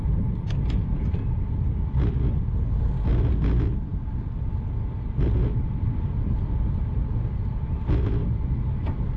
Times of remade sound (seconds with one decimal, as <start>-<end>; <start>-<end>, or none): none